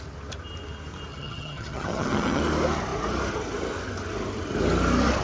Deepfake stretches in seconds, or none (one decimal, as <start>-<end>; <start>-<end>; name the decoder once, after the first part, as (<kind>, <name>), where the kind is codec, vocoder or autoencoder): 1.1-2.4 (vocoder, HiFi-GAN)